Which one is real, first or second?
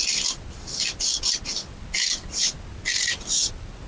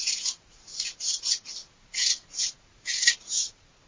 first